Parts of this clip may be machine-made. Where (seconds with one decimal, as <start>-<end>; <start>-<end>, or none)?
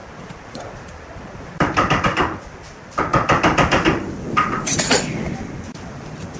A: none